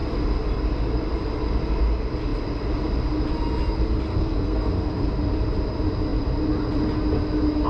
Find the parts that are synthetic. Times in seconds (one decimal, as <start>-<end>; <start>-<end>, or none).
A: 4.1-5.1